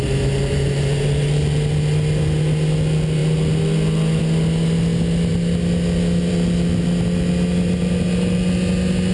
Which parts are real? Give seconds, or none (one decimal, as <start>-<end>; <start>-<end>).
0.0-9.1